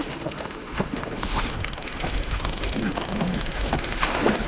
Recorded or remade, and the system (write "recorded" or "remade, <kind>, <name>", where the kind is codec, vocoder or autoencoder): remade, autoencoder, DAC-VAE